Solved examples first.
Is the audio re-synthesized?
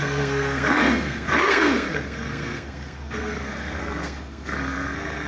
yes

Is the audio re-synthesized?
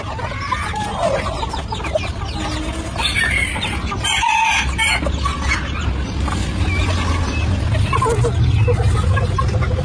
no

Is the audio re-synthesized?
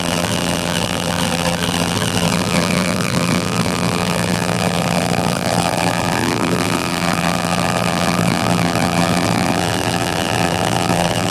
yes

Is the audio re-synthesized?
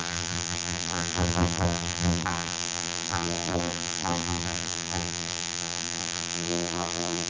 yes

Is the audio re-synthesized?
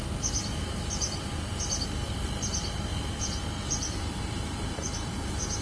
yes